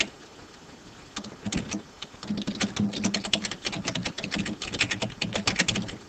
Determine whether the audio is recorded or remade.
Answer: recorded